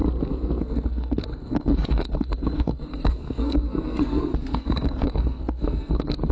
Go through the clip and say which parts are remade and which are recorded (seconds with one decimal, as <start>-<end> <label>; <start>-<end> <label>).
0.0-0.6 recorded; 0.6-6.3 remade